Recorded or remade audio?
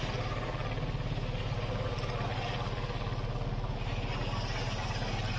recorded